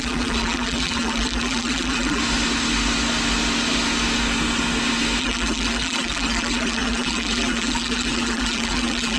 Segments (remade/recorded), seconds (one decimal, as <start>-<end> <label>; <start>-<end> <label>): 0.0-2.2 remade; 2.2-5.2 recorded; 5.2-9.2 remade